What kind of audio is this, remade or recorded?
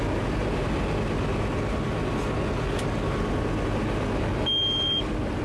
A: recorded